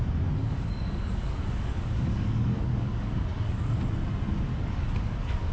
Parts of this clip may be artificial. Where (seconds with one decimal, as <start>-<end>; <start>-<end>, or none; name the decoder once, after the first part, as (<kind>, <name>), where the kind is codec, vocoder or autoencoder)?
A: 0.4-3.7 (codec, DAC); 4.5-5.5